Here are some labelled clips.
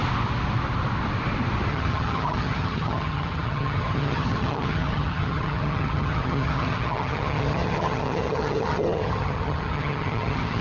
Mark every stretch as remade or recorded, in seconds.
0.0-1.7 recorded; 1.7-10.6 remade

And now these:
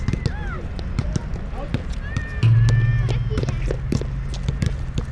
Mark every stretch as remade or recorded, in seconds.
0.0-5.1 recorded

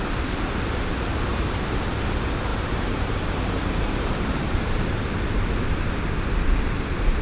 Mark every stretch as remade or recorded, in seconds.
0.0-1.3 recorded; 1.3-1.9 remade; 1.9-2.5 recorded; 2.5-5.8 remade; 5.8-7.2 recorded

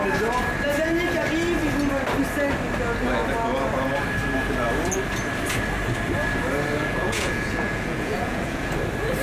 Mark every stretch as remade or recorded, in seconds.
0.0-6.8 recorded; 6.8-8.7 remade; 8.7-9.2 recorded

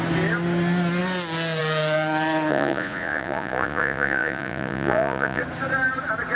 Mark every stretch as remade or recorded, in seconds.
0.0-2.5 recorded; 2.5-5.4 remade; 5.4-6.4 recorded